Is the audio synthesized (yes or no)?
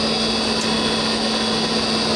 no